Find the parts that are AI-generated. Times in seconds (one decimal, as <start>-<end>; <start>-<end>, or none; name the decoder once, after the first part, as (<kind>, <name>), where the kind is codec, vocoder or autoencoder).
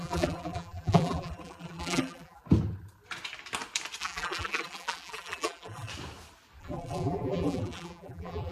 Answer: 0.0-2.4 (vocoder, BigVGAN v2); 4.0-5.9; 6.6-8.5